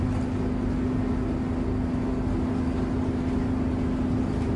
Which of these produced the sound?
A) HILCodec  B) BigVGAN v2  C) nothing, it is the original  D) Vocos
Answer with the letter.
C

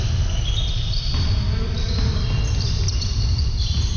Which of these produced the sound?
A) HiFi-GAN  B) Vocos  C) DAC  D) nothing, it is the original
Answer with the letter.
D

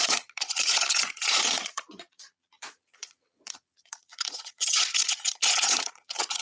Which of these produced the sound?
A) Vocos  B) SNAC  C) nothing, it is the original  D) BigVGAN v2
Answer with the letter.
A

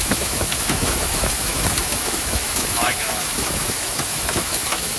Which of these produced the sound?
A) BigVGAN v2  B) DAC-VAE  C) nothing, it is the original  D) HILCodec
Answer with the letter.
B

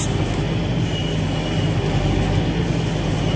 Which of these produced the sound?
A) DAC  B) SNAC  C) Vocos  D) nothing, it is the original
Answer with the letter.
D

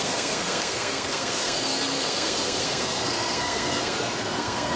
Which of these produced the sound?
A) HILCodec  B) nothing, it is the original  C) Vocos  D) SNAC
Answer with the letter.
D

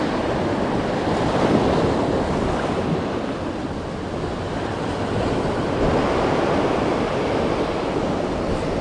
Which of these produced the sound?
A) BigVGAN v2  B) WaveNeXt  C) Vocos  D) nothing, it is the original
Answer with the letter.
D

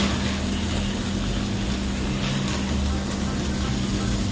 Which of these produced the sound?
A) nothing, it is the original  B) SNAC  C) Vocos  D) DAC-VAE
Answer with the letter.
A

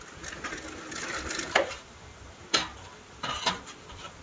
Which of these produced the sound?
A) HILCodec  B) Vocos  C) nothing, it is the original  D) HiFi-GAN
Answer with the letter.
C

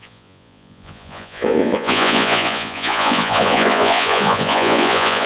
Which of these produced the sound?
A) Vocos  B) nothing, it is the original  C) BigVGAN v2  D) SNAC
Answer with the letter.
A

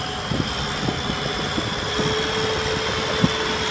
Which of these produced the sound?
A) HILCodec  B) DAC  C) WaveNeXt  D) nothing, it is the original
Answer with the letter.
D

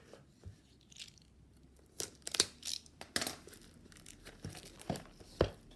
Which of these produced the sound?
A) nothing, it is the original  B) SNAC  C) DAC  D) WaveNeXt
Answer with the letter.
A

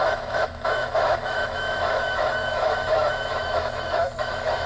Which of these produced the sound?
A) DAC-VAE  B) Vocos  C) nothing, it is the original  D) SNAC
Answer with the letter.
A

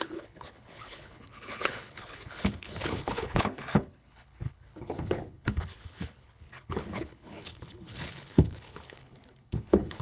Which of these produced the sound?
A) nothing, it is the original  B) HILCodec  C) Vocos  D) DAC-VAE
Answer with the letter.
B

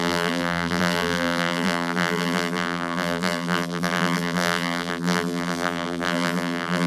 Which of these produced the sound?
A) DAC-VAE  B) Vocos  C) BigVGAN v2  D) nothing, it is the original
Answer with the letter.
C